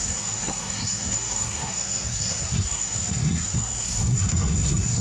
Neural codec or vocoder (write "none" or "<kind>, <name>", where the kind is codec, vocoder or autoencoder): codec, SNAC